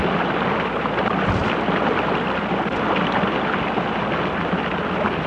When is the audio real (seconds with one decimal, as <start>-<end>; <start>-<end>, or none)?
0.0-5.3